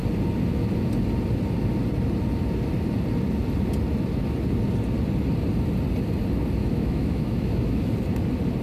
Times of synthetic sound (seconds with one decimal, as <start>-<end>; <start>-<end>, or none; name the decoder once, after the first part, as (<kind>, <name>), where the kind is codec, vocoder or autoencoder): 6.6-7.9 (autoencoder, DAC-VAE)